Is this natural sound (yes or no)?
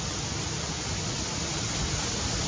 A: yes